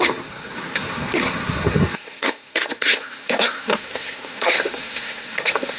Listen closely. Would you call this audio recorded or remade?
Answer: remade